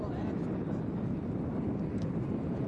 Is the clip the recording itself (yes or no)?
no